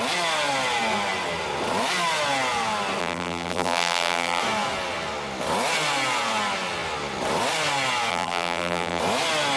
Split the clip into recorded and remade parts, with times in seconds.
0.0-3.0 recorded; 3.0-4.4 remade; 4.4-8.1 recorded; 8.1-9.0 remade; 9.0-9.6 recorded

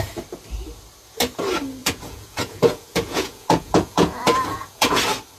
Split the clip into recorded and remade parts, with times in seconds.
0.0-1.8 recorded; 1.8-5.0 remade; 5.0-5.4 recorded